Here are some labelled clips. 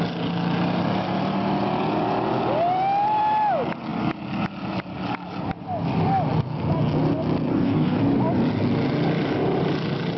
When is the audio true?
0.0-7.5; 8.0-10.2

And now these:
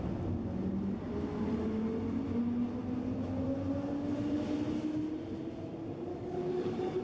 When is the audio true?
0.0-6.1

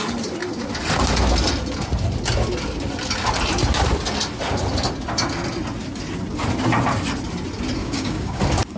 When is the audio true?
0.0-7.8; 8.4-8.8

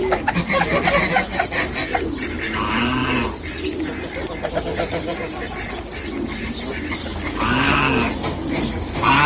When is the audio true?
0.0-7.0; 8.9-9.3

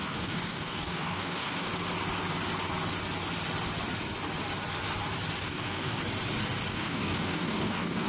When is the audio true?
1.7-5.4; 6.0-6.7

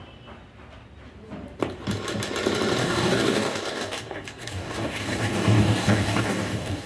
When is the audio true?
0.0-2.8

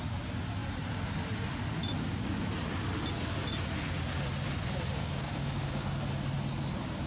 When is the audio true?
0.0-5.0; 5.9-7.1